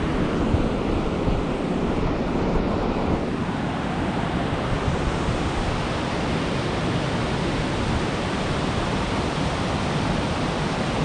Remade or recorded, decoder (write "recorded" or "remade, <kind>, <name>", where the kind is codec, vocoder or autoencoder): remade, vocoder, BigVGAN v2